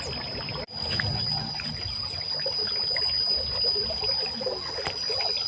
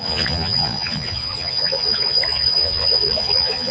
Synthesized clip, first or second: second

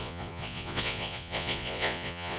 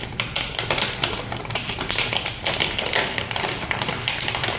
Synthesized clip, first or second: first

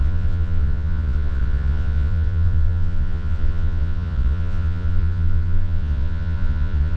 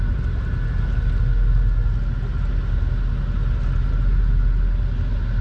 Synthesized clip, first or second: first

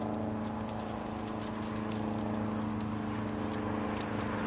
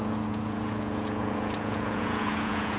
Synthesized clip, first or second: second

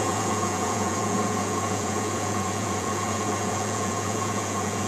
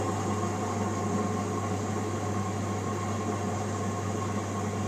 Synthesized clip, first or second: first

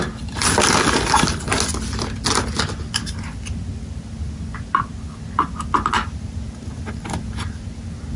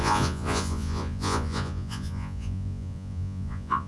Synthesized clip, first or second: second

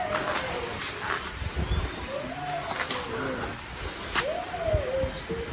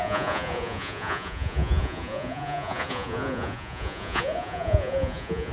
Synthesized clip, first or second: second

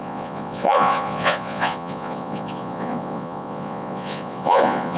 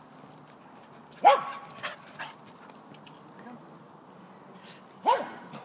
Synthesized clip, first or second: first